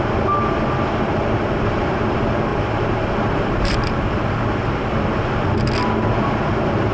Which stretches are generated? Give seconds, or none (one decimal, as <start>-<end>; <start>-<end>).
2.5-4.9